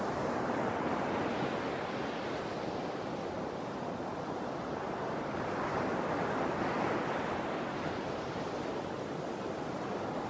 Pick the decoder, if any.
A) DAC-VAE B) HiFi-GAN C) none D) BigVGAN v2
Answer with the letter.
C